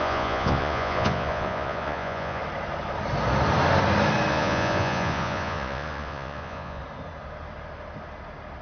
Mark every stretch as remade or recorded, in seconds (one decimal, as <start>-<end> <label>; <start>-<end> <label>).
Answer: 0.0-2.4 remade; 2.4-4.3 recorded; 4.3-6.8 remade; 6.8-8.6 recorded

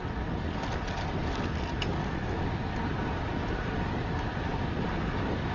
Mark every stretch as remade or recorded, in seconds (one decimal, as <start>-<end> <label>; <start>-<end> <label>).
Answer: 0.0-5.5 recorded